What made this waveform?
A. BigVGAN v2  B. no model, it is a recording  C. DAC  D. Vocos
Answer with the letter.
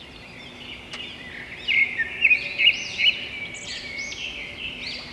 B